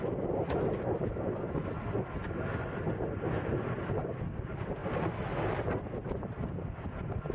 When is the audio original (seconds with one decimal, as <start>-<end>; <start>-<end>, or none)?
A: 0.0-4.8; 5.3-7.3